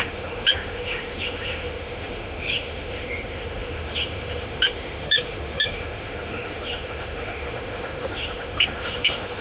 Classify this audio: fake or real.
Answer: fake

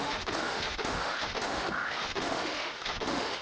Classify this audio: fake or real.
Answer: fake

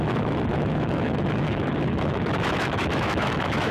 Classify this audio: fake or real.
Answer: fake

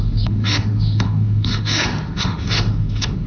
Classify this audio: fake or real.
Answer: fake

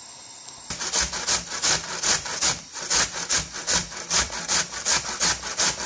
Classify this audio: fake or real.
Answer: real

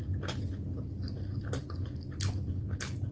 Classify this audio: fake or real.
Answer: real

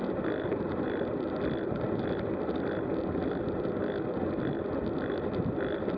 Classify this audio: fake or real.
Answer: real